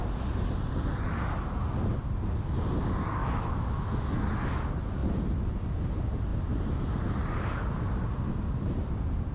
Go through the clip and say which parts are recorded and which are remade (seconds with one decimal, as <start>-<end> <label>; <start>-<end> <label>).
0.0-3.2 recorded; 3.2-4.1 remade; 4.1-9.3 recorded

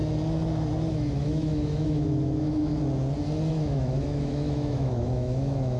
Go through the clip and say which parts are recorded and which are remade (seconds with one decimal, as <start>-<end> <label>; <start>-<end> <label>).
0.0-0.9 recorded; 0.9-2.7 remade; 2.7-3.5 recorded; 3.5-5.8 remade

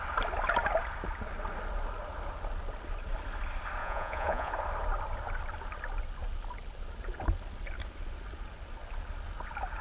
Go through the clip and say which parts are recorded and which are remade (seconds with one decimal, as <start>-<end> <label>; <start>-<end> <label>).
0.0-3.8 recorded; 3.8-4.5 remade; 4.5-9.8 recorded

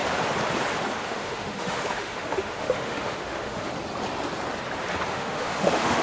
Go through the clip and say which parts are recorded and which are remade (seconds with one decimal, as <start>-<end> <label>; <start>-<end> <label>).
0.0-1.0 recorded; 1.0-3.7 remade; 3.7-5.1 recorded; 5.1-6.0 remade